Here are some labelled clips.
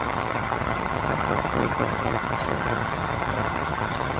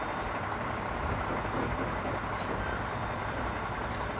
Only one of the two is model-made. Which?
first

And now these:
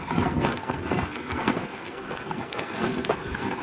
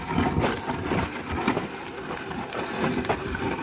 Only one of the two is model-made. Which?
first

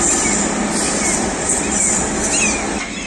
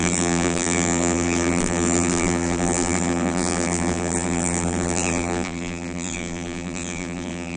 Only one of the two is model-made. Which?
second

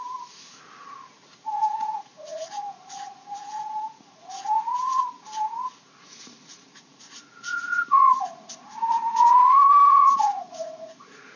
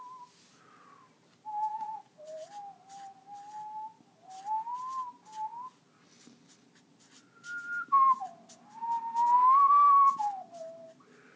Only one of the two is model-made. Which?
first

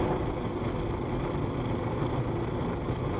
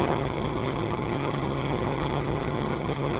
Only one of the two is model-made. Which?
second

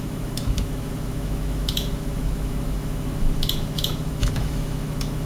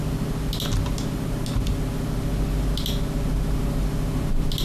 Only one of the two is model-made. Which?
first